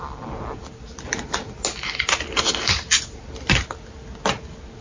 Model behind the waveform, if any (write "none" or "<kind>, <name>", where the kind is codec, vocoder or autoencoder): none